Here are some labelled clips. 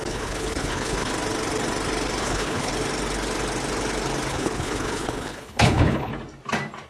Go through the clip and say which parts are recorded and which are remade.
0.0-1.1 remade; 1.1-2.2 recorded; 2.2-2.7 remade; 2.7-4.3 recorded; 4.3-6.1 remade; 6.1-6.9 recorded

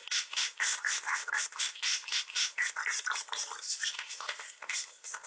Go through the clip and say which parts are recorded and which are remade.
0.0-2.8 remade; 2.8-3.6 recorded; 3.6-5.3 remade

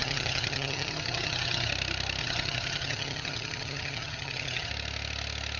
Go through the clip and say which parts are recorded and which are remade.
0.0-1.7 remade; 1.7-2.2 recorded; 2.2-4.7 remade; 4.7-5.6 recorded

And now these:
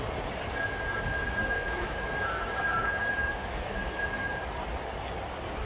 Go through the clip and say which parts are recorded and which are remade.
0.0-1.1 recorded; 1.1-4.4 remade; 4.4-5.7 recorded